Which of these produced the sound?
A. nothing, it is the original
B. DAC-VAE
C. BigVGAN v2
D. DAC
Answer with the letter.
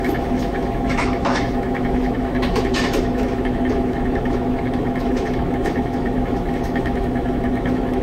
B